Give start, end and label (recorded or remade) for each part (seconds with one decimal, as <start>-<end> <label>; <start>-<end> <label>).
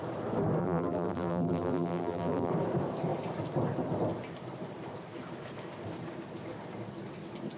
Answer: 0.0-0.6 recorded; 0.6-2.5 remade; 2.5-7.6 recorded